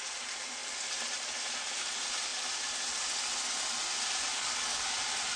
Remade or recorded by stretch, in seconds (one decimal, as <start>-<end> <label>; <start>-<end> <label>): 0.0-4.3 recorded; 4.3-4.9 remade; 4.9-5.4 recorded